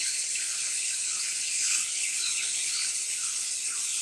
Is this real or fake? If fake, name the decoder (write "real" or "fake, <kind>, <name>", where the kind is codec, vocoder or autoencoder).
fake, codec, HILCodec